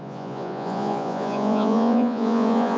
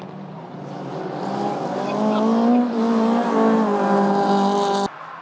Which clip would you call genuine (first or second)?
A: second